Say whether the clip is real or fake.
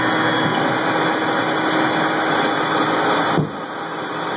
real